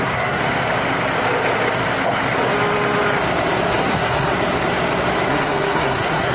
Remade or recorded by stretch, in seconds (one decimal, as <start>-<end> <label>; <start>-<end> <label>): 0.0-0.4 remade; 0.4-3.7 recorded; 3.7-4.3 remade; 4.3-5.3 recorded; 5.3-6.3 remade